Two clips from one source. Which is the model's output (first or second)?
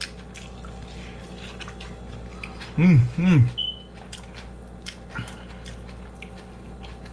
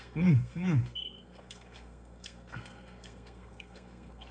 second